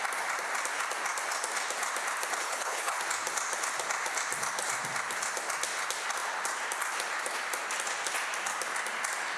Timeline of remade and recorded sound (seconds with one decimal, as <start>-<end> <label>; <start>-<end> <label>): 0.0-2.4 recorded; 2.4-3.0 remade; 3.0-9.4 recorded